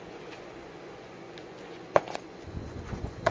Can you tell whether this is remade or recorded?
remade